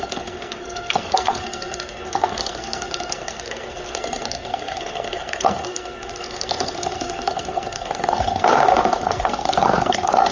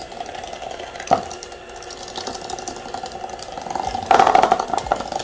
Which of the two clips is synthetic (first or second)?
first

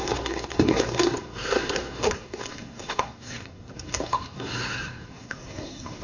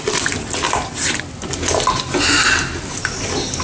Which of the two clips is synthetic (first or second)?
first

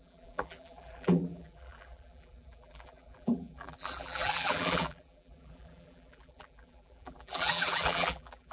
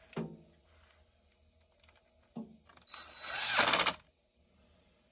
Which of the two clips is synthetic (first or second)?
first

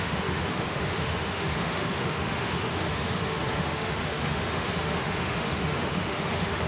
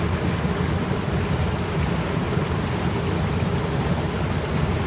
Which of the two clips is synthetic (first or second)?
first